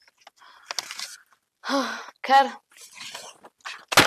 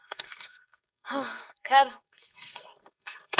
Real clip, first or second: first